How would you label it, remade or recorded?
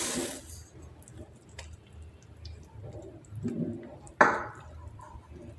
recorded